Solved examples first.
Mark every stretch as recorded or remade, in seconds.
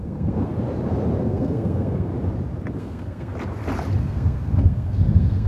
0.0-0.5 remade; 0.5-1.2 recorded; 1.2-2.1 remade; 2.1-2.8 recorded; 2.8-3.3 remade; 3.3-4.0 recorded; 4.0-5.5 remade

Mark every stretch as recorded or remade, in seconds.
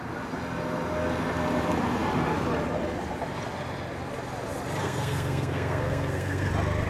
0.0-4.8 recorded; 4.8-6.5 remade; 6.5-6.9 recorded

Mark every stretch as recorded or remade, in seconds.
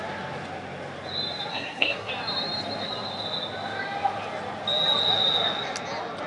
0.0-1.5 recorded; 1.5-2.1 remade; 2.1-6.3 recorded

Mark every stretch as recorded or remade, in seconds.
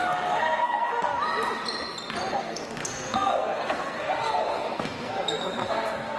0.0-1.1 remade; 1.1-2.3 recorded; 2.3-6.2 remade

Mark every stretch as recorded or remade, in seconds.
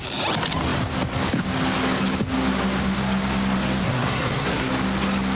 0.0-3.8 recorded; 3.8-4.7 remade; 4.7-5.3 recorded